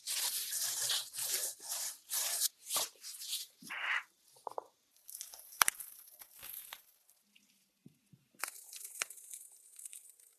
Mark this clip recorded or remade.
remade